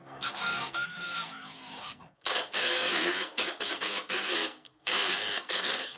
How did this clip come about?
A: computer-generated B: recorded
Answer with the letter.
A